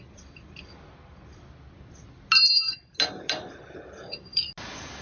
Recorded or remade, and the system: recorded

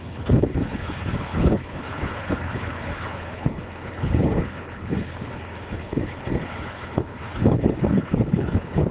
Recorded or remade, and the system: remade, codec, HILCodec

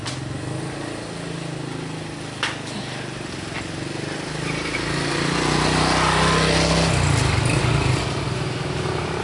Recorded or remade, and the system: recorded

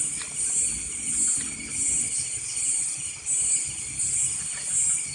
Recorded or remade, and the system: recorded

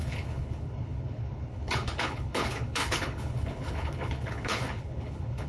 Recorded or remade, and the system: remade, codec, HILCodec